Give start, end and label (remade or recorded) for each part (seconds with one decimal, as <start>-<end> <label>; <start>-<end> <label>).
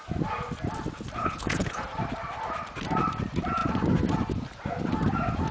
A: 0.0-1.2 recorded; 1.2-1.8 remade; 1.8-5.5 recorded